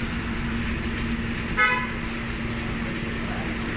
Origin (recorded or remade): recorded